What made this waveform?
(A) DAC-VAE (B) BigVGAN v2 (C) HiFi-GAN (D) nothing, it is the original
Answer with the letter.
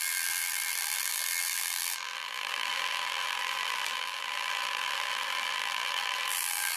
B